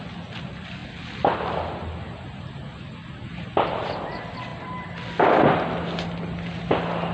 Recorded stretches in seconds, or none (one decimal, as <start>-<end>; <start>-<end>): 0.0-7.1